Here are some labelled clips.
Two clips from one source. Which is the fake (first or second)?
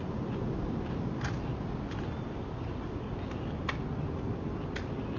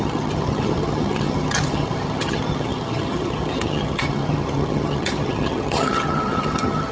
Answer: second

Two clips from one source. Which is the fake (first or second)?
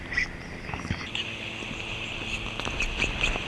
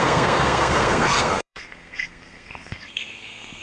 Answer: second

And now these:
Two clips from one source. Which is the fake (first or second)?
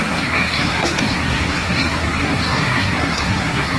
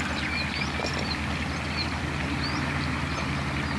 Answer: first